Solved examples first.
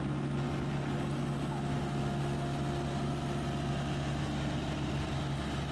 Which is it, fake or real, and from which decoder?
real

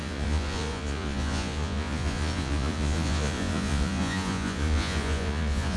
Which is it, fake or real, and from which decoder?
fake, vocoder, Vocos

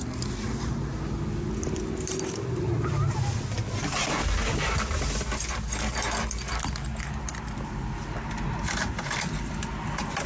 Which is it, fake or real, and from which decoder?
real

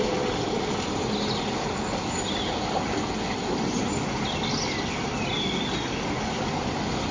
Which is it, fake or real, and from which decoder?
real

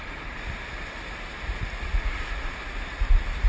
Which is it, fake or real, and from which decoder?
real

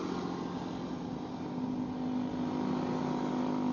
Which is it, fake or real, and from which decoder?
real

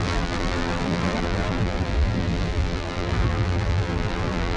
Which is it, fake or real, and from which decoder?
fake, vocoder, BigVGAN v2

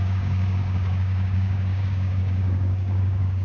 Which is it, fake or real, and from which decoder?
fake, codec, DAC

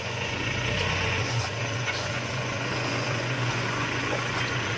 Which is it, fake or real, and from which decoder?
fake, vocoder, Vocos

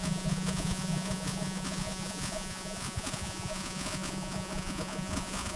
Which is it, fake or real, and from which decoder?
fake, vocoder, Vocos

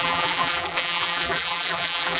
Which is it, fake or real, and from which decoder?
fake, vocoder, BigVGAN v2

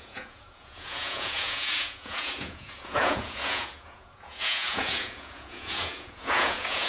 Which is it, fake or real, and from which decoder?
fake, vocoder, Vocos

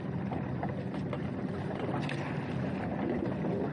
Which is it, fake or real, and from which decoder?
real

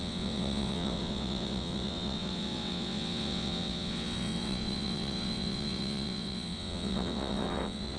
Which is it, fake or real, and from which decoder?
fake, vocoder, WaveNeXt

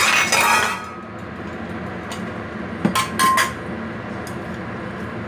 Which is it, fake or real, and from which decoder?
real